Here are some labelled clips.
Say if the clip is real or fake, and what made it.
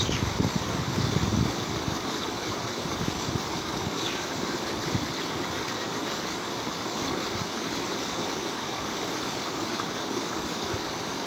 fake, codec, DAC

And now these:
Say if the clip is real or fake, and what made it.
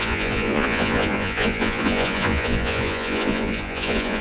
fake, vocoder, Vocos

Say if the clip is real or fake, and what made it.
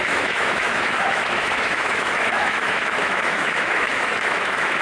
fake, autoencoder, DAC-VAE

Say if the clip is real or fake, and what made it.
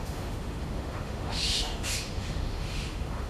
fake, autoencoder, DAC-VAE